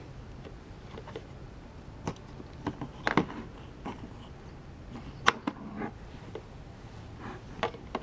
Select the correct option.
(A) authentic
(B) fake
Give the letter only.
A